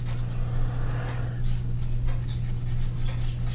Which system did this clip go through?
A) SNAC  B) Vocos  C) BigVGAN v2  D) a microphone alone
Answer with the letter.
D